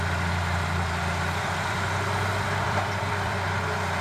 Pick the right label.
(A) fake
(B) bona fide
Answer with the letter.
A